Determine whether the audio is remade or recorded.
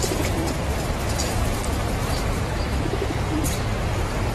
recorded